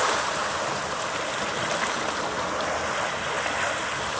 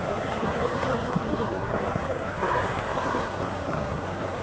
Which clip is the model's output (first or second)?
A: second